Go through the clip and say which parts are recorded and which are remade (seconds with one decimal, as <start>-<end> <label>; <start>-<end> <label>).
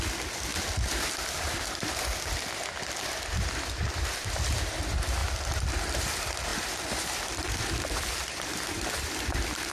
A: 0.0-0.5 remade; 0.5-3.3 recorded; 3.3-9.7 remade